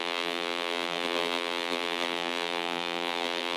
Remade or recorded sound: remade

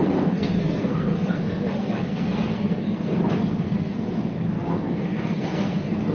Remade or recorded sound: remade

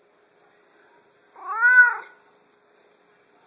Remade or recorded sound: recorded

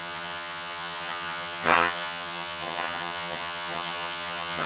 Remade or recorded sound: remade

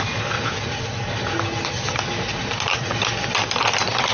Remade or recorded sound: recorded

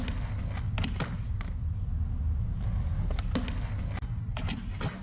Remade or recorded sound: recorded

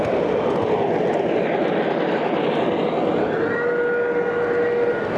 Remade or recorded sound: recorded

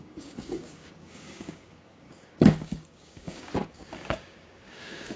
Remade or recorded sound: remade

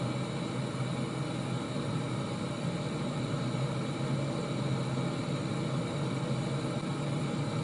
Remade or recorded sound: recorded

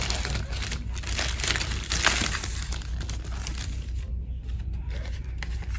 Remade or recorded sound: recorded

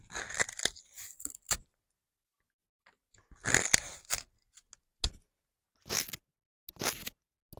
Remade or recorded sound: recorded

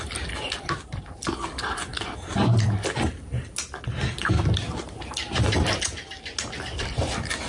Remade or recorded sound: recorded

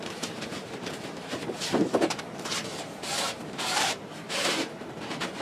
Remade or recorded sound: remade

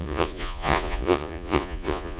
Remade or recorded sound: remade